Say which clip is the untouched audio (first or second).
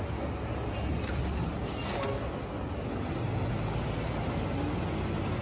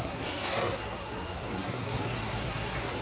first